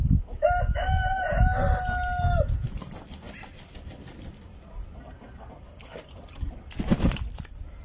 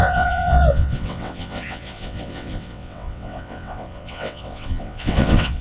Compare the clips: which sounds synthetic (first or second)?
second